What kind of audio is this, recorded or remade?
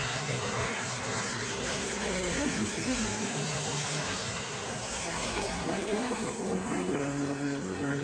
remade